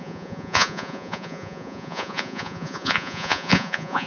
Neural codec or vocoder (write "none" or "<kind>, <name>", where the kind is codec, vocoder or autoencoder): vocoder, Vocos